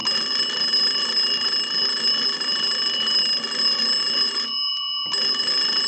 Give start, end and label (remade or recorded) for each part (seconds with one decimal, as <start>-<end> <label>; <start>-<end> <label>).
0.0-5.9 recorded